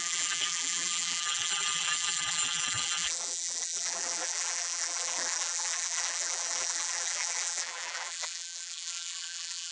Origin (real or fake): fake